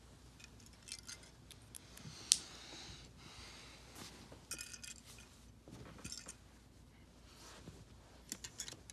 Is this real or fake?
real